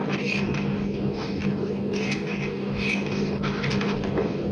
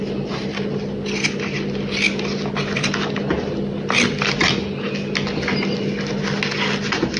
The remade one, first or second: first